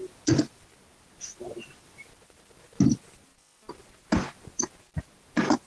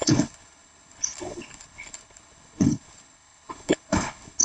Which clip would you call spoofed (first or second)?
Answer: second